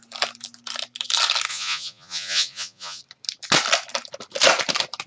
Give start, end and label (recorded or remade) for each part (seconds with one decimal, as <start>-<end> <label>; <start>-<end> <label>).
0.0-1.5 recorded; 1.5-3.0 remade; 3.0-5.1 recorded